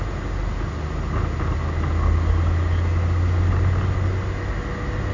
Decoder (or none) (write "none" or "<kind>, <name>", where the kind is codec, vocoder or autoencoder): none